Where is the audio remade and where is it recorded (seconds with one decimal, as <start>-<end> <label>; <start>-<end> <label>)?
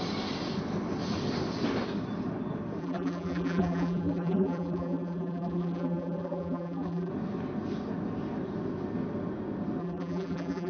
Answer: 0.0-2.8 recorded; 2.8-7.1 remade; 7.1-9.8 recorded; 9.8-10.7 remade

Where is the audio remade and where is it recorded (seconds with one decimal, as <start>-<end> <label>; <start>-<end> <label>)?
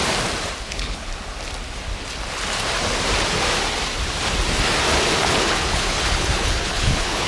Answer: 0.0-0.6 recorded; 0.6-1.1 remade; 1.1-5.3 recorded; 5.3-7.3 remade